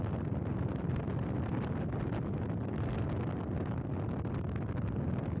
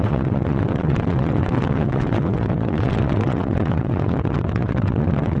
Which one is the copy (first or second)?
second